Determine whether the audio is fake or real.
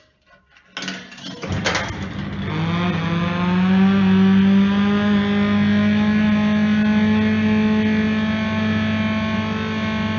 real